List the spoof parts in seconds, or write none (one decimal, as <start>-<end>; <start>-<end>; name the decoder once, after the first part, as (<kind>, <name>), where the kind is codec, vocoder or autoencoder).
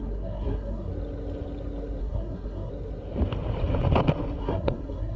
0.0-0.9 (codec, SNAC); 2.0-2.7; 4.4-5.2